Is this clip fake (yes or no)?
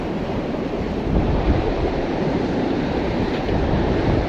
yes